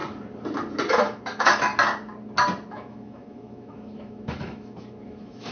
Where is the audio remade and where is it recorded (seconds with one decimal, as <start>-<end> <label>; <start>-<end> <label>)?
0.0-0.9 recorded; 0.9-1.7 remade; 1.7-2.7 recorded; 2.7-5.5 remade

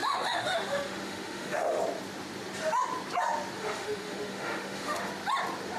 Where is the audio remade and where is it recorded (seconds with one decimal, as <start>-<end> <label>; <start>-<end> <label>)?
0.0-1.8 remade; 1.8-3.6 recorded; 3.6-5.1 remade; 5.1-5.8 recorded

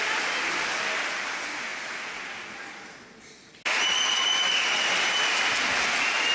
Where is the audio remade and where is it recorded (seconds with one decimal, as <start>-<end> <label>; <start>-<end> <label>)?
0.0-6.3 recorded

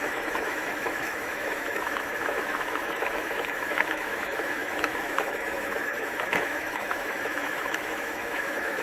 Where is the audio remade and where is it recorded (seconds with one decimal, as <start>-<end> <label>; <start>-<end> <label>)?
0.0-8.8 remade

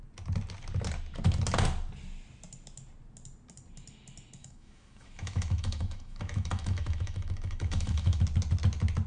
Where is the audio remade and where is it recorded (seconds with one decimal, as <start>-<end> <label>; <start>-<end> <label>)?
0.0-4.4 recorded; 4.4-8.2 remade; 8.2-9.1 recorded

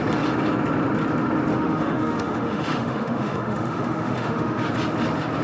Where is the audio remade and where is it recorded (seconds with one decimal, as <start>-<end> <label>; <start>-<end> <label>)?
0.0-1.5 recorded; 1.5-4.7 remade; 4.7-5.4 recorded